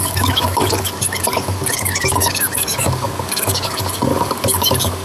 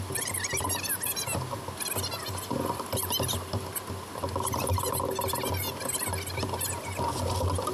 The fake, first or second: first